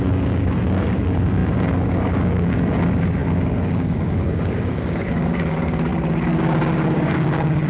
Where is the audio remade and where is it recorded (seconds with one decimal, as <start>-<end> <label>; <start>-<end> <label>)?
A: 0.0-5.9 remade; 5.9-6.4 recorded; 6.4-7.7 remade